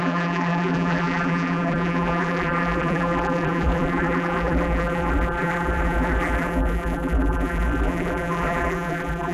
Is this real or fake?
fake